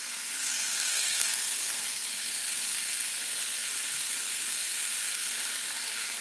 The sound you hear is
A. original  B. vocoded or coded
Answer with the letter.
B